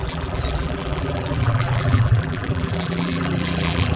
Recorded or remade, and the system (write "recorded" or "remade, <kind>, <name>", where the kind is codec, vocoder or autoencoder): remade, vocoder, BigVGAN v2